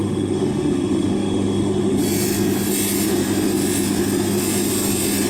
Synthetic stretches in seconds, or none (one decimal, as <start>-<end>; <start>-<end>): 0.0-2.0